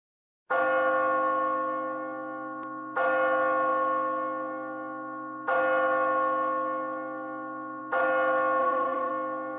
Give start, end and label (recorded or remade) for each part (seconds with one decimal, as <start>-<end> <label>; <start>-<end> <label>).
0.0-8.6 recorded; 8.6-9.1 remade; 9.1-9.6 recorded